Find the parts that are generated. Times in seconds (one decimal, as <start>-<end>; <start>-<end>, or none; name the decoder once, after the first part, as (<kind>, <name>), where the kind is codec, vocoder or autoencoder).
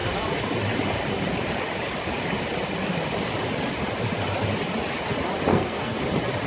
5.5-6.0 (codec, SNAC)